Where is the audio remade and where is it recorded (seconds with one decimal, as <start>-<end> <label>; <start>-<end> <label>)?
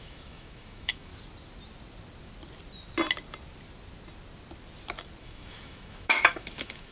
0.0-1.1 remade; 1.1-5.2 recorded; 5.2-6.9 remade